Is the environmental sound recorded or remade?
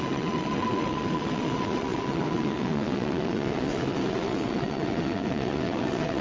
remade